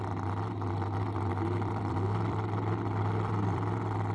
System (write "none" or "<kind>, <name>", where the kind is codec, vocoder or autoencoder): vocoder, BigVGAN v2